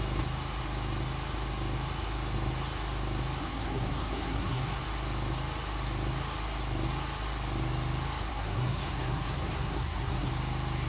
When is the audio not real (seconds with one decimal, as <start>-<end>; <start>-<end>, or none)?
3.4-4.8; 8.3-10.3

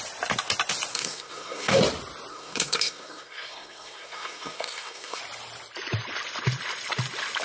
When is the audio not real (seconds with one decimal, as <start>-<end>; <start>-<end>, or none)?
0.9-1.8; 2.3-5.2